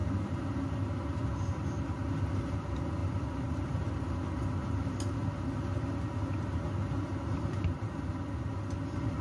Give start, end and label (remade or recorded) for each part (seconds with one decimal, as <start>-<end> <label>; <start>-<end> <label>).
0.0-3.0 recorded; 3.0-3.7 remade; 3.7-7.1 recorded; 7.1-8.2 remade; 8.2-9.2 recorded